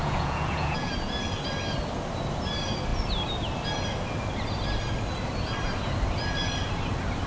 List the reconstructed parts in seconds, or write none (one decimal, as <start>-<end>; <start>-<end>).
0.0-0.9